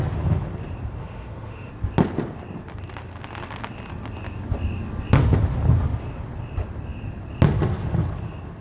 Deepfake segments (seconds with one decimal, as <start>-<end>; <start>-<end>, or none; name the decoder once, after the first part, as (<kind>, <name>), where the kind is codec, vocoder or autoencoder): 1.0-1.7 (autoencoder, DAC-VAE)